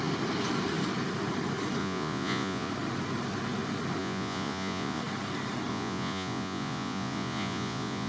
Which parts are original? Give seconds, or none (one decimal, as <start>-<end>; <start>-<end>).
0.0-1.8; 2.7-4.0; 5.0-5.7

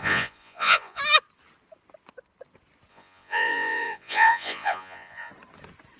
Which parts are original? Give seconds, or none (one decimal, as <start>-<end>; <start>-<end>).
1.0-2.9; 5.3-6.0

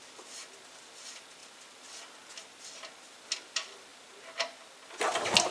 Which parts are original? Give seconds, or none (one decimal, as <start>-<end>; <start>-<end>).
0.0-5.5